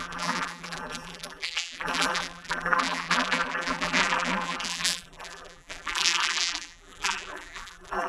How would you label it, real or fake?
fake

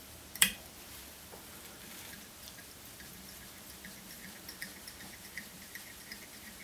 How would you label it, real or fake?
fake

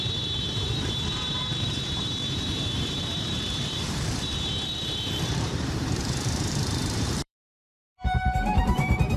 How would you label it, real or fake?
fake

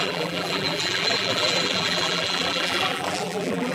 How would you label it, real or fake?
fake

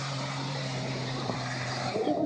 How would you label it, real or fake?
fake